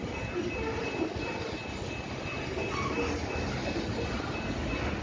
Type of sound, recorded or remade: recorded